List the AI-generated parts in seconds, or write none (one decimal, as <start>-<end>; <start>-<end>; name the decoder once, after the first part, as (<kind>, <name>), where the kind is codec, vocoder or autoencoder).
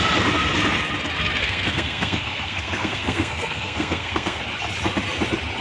1.4-4.4 (codec, SNAC)